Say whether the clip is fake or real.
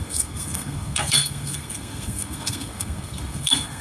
fake